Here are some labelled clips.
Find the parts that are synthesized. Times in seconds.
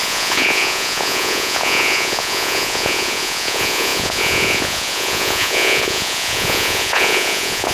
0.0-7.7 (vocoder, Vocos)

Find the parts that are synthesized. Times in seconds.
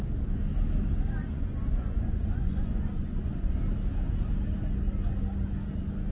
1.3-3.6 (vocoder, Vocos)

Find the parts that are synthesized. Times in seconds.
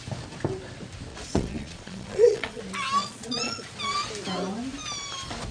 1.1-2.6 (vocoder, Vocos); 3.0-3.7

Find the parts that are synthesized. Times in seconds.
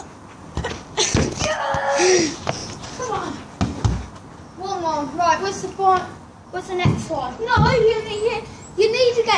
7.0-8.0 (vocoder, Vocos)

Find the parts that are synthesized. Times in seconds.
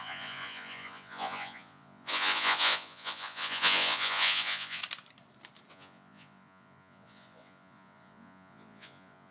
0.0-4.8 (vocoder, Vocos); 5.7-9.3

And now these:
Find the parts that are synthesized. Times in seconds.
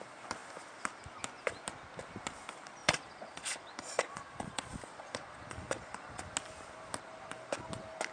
2.8-6.2 (vocoder, Vocos)